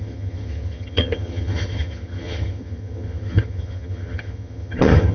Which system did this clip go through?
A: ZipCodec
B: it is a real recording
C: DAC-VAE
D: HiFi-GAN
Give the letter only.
D